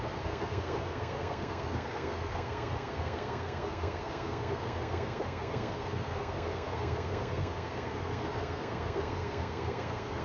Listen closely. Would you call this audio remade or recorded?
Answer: remade